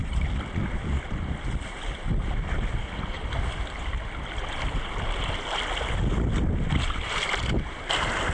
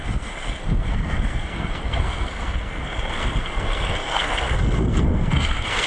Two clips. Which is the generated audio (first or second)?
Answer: second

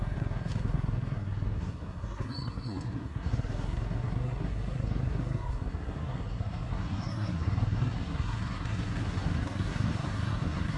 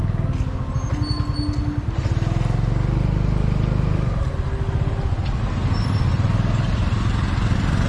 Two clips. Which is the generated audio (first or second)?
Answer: first